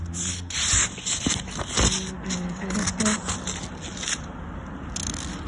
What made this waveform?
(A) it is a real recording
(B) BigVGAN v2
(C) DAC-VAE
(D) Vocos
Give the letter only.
A